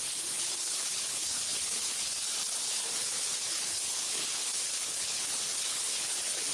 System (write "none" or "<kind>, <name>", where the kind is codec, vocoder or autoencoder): codec, HILCodec